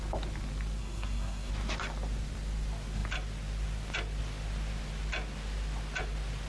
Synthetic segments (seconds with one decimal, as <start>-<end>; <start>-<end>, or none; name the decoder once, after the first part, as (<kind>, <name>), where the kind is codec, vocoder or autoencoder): 0.8-1.5 (codec, SNAC)